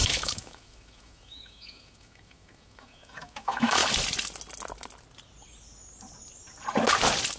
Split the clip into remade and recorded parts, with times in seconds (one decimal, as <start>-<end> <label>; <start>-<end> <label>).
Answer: 0.0-3.8 remade; 3.8-7.4 recorded